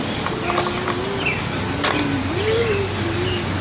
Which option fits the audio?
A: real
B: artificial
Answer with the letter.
A